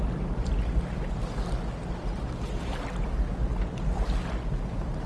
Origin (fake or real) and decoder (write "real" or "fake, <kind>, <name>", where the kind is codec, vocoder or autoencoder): real